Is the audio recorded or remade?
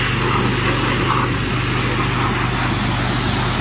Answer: recorded